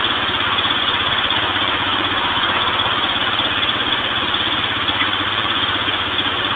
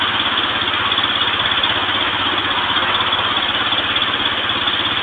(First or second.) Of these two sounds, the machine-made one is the first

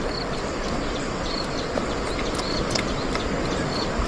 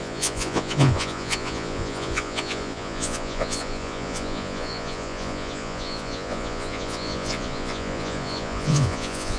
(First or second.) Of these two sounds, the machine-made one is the second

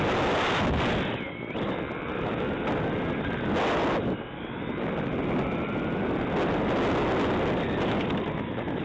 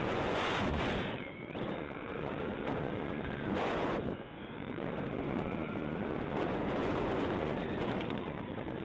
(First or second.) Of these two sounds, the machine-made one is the second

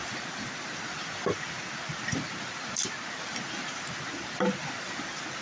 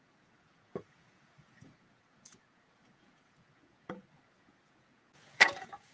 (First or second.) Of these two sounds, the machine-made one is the second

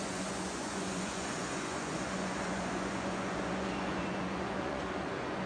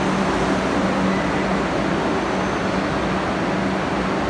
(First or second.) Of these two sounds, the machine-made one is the first